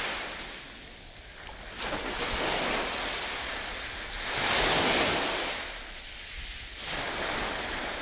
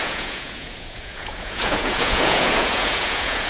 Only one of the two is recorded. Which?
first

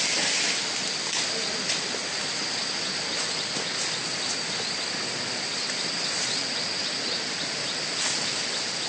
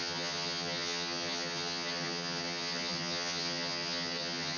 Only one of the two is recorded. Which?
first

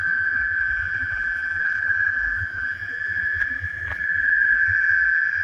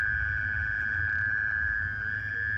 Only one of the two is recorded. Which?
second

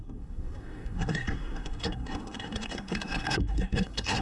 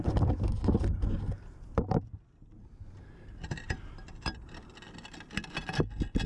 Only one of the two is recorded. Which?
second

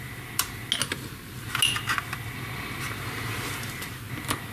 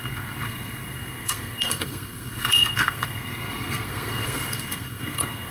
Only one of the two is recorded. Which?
first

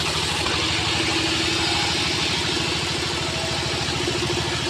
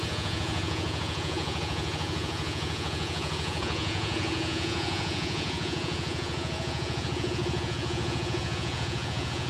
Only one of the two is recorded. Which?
first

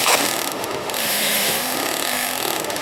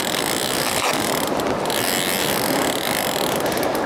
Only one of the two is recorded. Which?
second